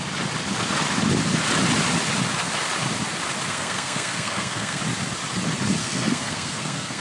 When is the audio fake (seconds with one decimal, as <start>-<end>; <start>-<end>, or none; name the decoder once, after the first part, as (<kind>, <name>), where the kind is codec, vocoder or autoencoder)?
3.5-4.8 (codec, SNAC); 5.8-7.0